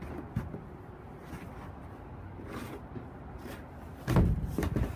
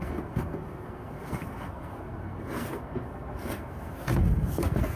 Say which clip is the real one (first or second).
first